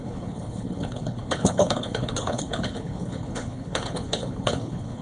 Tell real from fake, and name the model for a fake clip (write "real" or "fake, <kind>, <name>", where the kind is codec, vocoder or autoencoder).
fake, codec, HILCodec